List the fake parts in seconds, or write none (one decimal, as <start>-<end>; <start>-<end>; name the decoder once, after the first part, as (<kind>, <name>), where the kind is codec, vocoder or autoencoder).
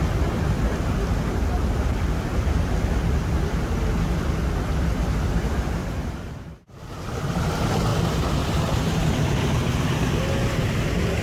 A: none